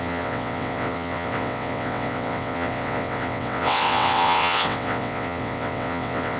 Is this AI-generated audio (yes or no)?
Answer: yes